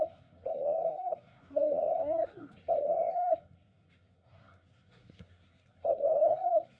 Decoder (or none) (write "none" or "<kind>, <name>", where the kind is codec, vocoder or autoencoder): codec, SNAC